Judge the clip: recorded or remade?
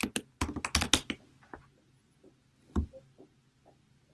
recorded